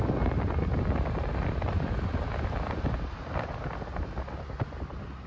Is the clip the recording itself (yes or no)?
yes